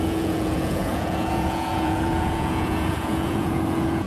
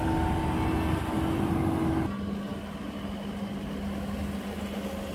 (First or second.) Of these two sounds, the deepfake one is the first